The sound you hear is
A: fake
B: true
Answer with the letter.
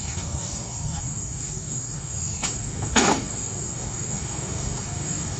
A